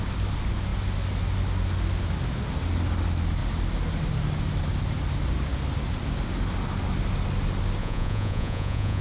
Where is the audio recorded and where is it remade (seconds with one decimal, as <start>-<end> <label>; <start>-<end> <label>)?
0.0-7.8 recorded; 7.8-9.0 remade